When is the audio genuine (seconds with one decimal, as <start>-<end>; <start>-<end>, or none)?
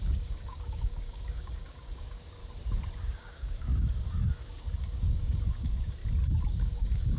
2.4-3.0; 6.0-6.5